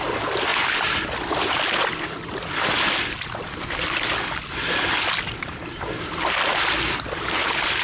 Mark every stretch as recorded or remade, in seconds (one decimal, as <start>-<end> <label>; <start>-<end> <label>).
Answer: 0.0-7.8 recorded